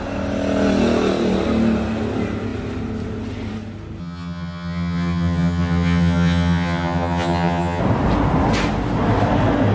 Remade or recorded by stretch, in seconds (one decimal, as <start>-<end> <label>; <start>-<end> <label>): 0.0-4.0 recorded; 4.0-7.8 remade; 7.8-9.7 recorded